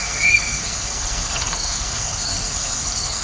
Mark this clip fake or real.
fake